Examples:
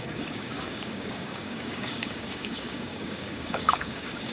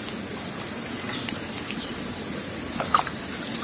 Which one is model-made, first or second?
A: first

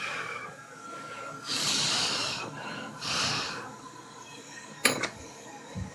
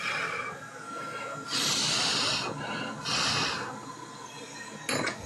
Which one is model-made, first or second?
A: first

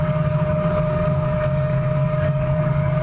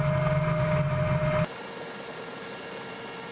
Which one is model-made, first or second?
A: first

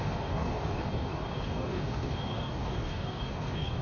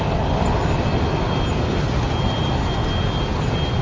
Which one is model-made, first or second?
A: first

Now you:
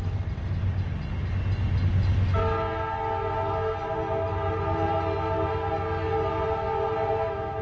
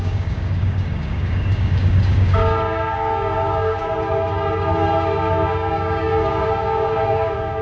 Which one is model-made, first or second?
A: second